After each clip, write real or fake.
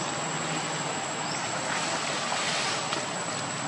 real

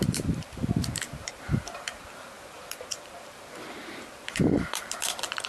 fake